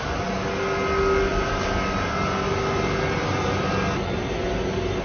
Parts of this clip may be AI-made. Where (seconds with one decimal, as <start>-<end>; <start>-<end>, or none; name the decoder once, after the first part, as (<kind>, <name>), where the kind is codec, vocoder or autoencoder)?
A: 1.3-1.8 (vocoder, BigVGAN v2)